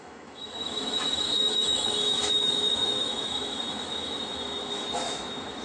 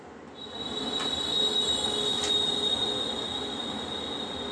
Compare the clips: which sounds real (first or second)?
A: second